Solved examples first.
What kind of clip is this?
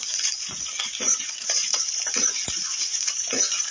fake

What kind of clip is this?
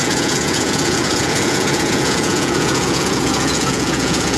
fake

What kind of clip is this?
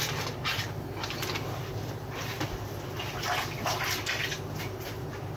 real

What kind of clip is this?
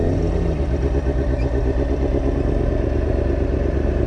real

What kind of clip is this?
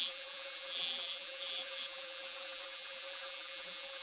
fake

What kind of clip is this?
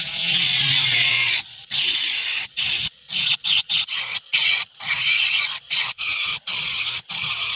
fake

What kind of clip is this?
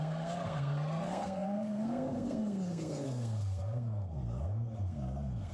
fake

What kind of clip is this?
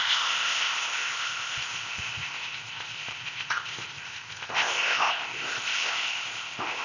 fake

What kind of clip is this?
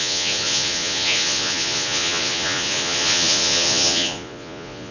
fake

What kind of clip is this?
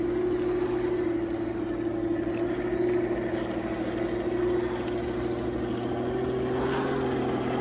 real